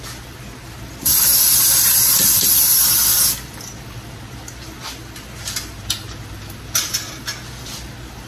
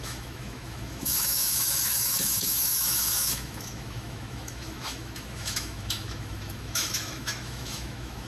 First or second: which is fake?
second